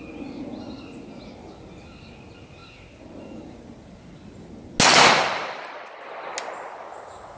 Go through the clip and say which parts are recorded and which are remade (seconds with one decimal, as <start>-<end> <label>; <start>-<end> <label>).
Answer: 0.0-7.4 recorded